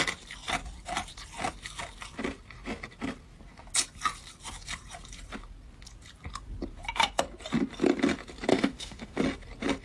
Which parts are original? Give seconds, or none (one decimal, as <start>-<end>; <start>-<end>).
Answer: 0.0-8.5; 9.2-9.8